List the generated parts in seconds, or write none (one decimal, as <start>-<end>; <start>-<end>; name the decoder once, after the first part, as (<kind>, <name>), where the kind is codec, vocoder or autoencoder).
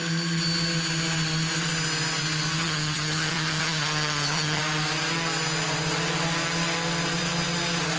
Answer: 2.6-4.6 (vocoder, HiFi-GAN)